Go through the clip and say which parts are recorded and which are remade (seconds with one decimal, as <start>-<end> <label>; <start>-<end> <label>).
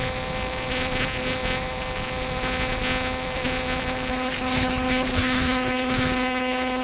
0.0-4.1 recorded; 4.1-6.8 remade